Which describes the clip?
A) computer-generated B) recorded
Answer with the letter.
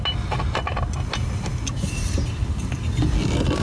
B